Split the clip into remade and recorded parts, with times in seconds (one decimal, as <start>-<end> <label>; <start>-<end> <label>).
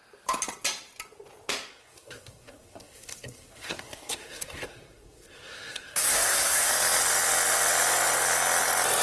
0.0-1.7 recorded; 1.7-6.7 remade; 6.7-9.0 recorded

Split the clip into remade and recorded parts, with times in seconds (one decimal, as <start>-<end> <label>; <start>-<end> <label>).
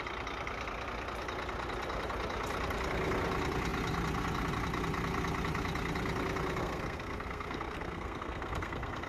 0.0-6.6 recorded; 6.6-9.1 remade